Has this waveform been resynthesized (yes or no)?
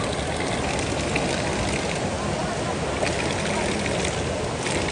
no